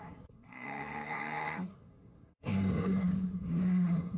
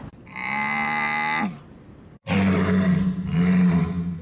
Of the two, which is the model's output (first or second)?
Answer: first